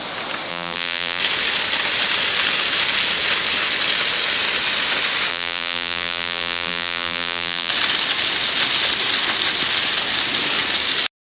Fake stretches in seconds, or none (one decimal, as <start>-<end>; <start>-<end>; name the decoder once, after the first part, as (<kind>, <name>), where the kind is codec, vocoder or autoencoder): 0.5-1.2 (vocoder, BigVGAN v2); 5.3-7.7